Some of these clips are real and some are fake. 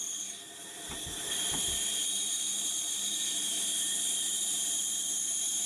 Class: fake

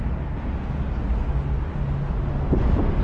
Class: real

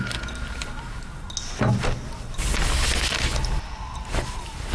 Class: real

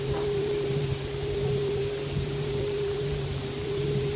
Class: fake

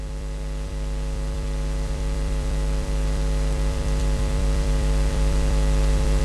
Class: fake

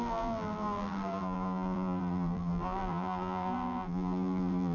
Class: fake